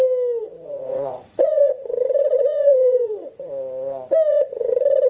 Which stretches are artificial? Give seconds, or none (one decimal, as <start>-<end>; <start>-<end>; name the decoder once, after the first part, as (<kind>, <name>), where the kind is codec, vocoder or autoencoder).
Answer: 0.4-3.5 (vocoder, Vocos); 4.3-5.1